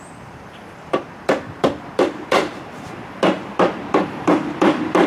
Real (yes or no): no